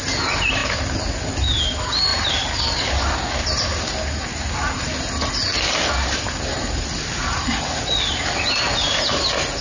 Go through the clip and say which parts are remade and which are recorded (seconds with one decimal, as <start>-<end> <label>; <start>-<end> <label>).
0.0-9.6 recorded